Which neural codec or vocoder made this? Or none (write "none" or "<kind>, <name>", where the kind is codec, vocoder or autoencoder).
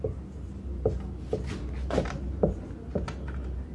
none